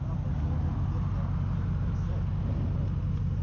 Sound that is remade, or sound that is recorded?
recorded